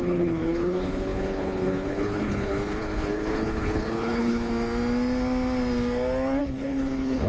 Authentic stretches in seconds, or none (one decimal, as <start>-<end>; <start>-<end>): 4.5-6.4